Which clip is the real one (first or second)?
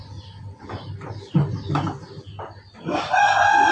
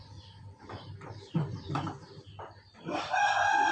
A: first